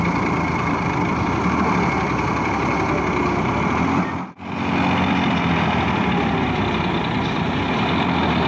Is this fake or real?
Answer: real